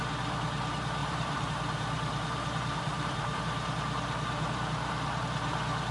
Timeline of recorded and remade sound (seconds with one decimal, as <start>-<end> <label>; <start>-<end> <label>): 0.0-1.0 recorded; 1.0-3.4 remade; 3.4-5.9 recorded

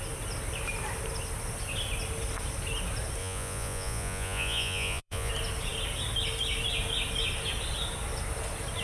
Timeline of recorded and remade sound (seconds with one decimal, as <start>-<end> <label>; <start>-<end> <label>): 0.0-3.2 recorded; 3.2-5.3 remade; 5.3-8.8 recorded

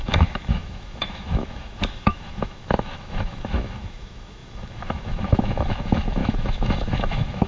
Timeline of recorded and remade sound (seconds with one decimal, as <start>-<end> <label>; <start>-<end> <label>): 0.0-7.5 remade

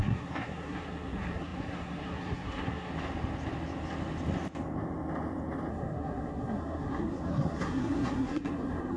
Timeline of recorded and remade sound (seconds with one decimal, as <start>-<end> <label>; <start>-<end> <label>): 0.0-2.9 remade; 2.9-5.7 recorded; 5.7-9.0 remade

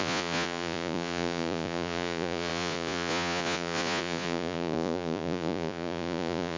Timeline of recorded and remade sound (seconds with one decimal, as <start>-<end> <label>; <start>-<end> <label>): 0.0-6.6 remade

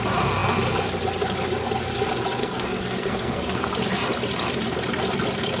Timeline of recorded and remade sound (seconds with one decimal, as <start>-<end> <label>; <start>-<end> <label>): 0.0-2.4 recorded; 2.4-3.7 remade; 3.7-5.6 recorded

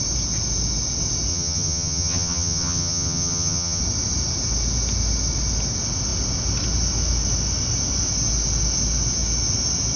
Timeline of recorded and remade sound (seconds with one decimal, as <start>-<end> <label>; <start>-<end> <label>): 0.0-1.3 recorded; 1.3-3.8 remade; 3.8-10.0 recorded

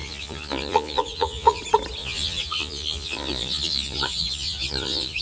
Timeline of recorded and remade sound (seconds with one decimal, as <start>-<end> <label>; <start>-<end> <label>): 0.0-1.6 remade; 1.6-2.0 recorded; 2.0-5.2 remade